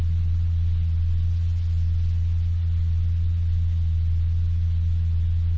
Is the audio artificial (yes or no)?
no